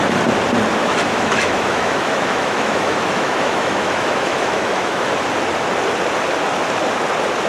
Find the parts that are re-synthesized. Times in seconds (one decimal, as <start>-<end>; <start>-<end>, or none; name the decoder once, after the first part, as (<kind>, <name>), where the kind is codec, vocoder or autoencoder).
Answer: 0.8-5.1 (autoencoder, DAC-VAE)